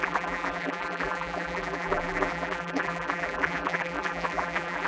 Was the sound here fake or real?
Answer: fake